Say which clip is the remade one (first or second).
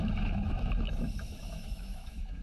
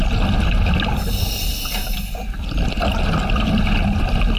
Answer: first